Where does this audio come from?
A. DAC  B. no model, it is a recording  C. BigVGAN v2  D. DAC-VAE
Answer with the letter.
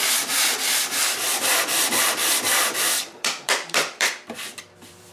C